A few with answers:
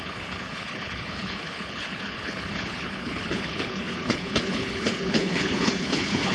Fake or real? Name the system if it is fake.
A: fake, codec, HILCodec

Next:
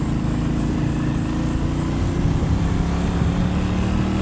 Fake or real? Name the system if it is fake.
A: real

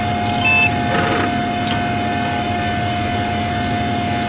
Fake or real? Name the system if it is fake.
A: real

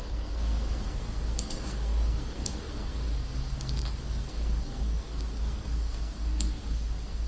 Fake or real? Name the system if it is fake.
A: fake, codec, SNAC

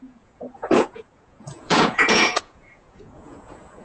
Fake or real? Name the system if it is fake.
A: fake, vocoder, Vocos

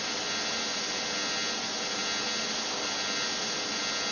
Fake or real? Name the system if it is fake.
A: real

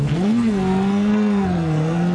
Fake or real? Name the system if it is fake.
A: fake, codec, SNAC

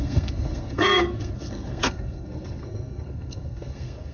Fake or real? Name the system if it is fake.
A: fake, codec, SNAC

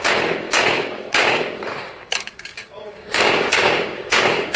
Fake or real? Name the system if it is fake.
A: fake, codec, DAC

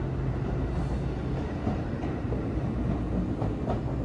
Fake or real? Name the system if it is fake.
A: real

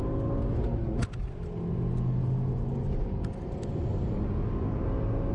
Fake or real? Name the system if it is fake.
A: real